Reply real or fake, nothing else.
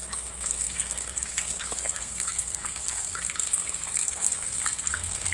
fake